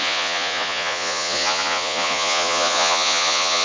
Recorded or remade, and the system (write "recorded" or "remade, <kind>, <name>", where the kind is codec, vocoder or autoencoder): remade, vocoder, Vocos